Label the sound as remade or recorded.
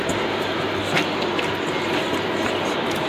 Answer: recorded